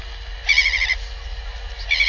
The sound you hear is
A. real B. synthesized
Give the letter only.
A